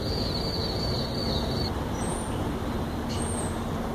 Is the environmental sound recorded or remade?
recorded